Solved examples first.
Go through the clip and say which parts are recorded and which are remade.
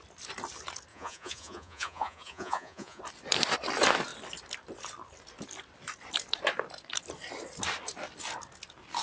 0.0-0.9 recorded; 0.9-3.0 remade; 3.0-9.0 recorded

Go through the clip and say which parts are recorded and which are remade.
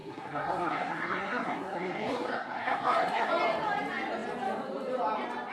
0.0-3.3 remade; 3.3-5.5 recorded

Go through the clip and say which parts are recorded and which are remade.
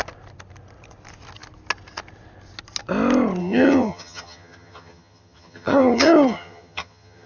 0.0-3.4 recorded; 3.4-7.3 remade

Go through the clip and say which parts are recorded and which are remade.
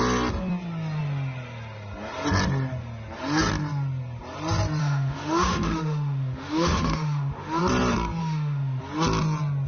0.0-4.8 recorded; 4.8-7.6 remade; 7.6-8.2 recorded; 8.2-8.8 remade; 8.8-9.7 recorded